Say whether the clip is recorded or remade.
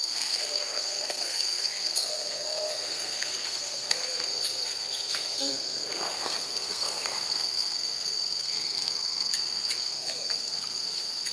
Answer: remade